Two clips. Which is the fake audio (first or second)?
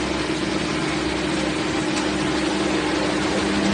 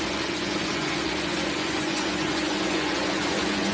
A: second